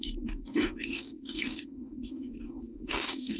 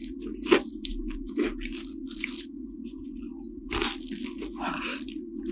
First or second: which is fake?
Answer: first